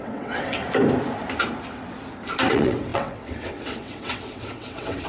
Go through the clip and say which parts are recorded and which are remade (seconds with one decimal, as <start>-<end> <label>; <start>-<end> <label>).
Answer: 0.0-0.6 remade; 0.6-2.5 recorded; 2.5-5.1 remade